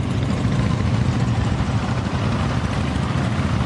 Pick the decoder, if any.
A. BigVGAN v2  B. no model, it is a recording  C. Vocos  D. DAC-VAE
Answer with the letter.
B